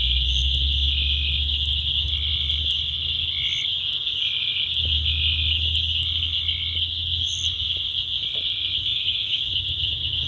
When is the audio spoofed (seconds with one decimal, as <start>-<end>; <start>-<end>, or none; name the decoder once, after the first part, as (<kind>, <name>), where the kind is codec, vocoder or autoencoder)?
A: 8.9-9.5 (autoencoder, DAC-VAE)